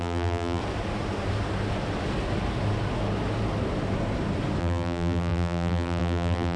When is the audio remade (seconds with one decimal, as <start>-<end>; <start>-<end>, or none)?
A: 0.0-0.6; 4.6-6.6